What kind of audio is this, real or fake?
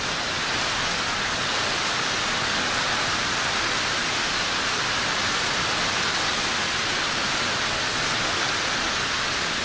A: real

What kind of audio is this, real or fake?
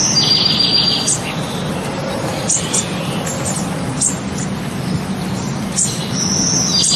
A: real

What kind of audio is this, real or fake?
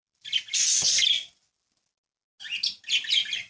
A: real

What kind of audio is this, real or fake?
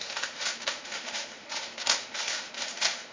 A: fake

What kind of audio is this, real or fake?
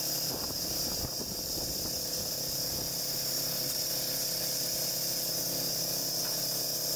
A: real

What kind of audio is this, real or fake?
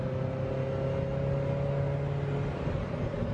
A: real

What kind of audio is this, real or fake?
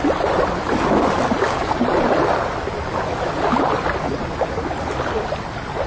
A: real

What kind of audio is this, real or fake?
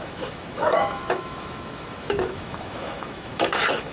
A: fake